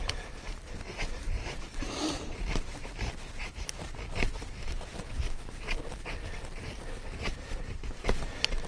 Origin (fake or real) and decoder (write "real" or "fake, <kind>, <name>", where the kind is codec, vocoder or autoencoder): fake, vocoder, BigVGAN v2